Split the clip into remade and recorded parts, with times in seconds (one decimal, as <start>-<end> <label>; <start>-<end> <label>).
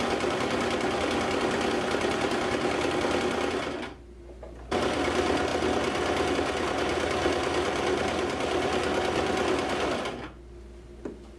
0.0-11.4 recorded